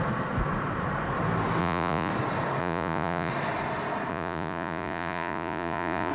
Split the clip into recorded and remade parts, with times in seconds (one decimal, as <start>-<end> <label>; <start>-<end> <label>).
0.0-1.6 recorded; 1.6-2.1 remade; 2.1-2.6 recorded; 2.6-3.3 remade; 3.3-4.1 recorded; 4.1-6.1 remade